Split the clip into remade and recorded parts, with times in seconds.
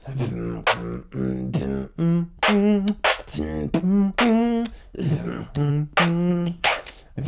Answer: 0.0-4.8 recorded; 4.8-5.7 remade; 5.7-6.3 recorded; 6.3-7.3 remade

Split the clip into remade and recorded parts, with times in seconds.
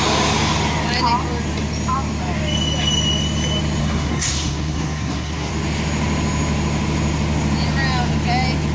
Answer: 0.0-3.8 recorded; 3.8-5.5 remade; 5.5-8.7 recorded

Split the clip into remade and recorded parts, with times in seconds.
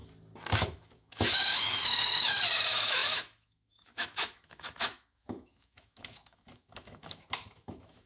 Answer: 0.0-0.6 recorded; 0.6-8.1 remade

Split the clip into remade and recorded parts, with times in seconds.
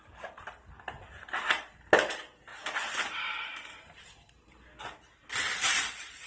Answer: 0.0-6.3 recorded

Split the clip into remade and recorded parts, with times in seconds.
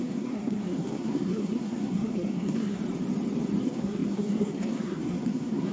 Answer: 0.0-2.8 remade; 2.8-3.6 recorded; 3.6-5.7 remade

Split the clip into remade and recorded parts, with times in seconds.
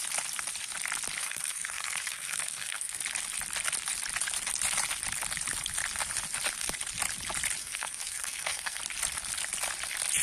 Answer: 0.0-1.2 recorded; 1.2-3.0 remade; 3.0-7.6 recorded; 7.6-8.8 remade; 8.8-10.2 recorded